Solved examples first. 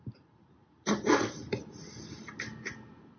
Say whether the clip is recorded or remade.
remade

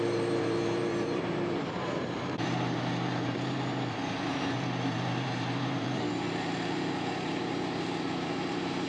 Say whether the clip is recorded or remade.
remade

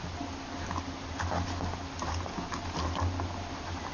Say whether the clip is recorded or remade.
recorded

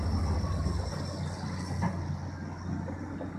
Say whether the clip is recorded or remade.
recorded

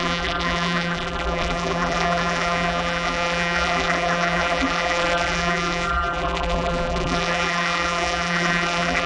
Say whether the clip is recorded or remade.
remade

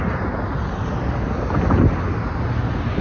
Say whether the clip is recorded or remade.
recorded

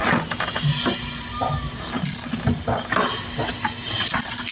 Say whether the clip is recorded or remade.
recorded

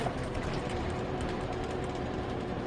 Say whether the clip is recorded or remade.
remade